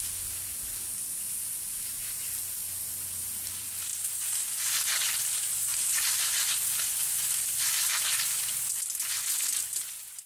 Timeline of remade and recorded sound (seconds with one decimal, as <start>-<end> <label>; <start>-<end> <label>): 0.0-5.7 recorded; 5.7-7.9 remade; 7.9-10.3 recorded